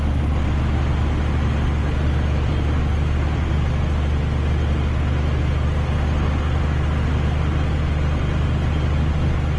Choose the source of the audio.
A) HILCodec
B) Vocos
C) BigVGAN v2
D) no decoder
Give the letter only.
D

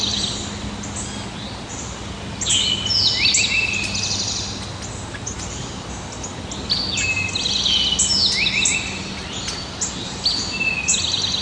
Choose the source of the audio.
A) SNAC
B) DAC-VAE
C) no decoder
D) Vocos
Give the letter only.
C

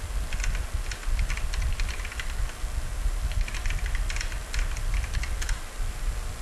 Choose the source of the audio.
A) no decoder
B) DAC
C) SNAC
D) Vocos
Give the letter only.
A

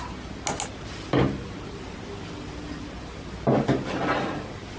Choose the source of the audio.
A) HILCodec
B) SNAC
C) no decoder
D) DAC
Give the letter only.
C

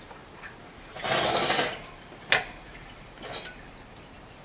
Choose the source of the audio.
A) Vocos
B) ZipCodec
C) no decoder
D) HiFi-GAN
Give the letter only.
C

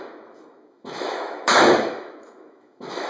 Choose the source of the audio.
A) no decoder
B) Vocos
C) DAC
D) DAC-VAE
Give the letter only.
D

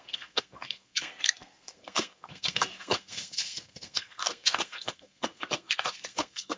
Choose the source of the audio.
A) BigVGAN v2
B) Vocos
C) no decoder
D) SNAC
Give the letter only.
D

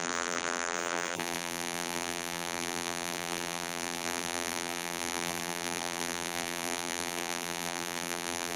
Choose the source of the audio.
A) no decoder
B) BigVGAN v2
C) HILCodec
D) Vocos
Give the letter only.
B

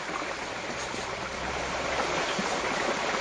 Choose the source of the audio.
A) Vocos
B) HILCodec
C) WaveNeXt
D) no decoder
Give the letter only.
D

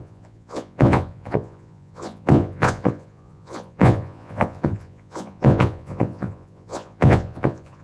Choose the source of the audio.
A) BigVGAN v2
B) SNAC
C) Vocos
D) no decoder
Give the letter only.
C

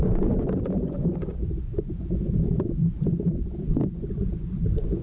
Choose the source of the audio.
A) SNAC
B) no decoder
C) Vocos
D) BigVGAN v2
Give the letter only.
C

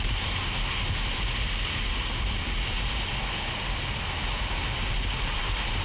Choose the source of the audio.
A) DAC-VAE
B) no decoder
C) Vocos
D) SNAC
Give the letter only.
B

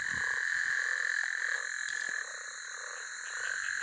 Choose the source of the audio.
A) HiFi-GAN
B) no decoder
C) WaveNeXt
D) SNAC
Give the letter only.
B